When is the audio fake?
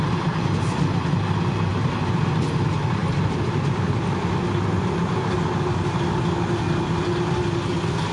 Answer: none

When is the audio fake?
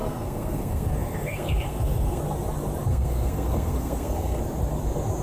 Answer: 0.0-2.2 (codec, SNAC); 2.9-4.4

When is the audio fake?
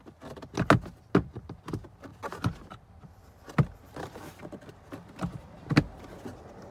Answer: 2.1-3.3 (vocoder, BigVGAN v2)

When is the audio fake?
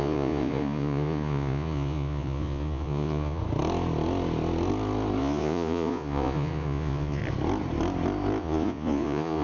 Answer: 0.0-3.4 (vocoder, Vocos); 5.2-7.2; 8.4-9.4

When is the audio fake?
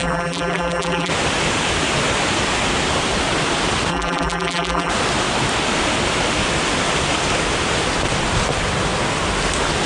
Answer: 0.0-1.1 (vocoder, BigVGAN v2); 3.9-4.9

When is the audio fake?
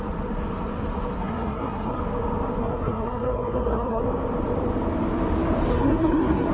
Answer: 1.2-2.0 (codec, SNAC); 2.6-4.0; 5.7-6.5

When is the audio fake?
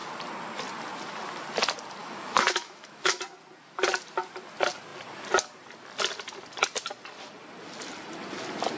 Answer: 2.0-3.2 (autoencoder, DAC-VAE)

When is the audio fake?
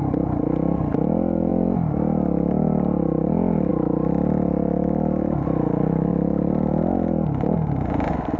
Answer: none